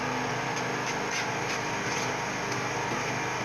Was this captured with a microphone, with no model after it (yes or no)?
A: yes